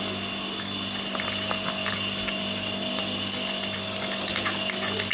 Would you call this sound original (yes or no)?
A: yes